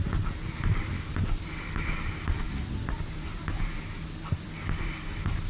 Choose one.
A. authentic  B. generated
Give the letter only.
A